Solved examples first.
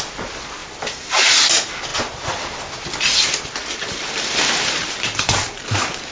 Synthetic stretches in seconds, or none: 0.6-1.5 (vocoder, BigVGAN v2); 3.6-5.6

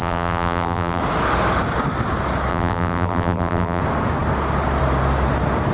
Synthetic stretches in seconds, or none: 0.0-1.0 (vocoder, BigVGAN v2); 2.5-3.8